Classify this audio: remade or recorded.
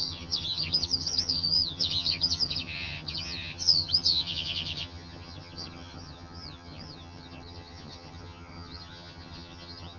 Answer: remade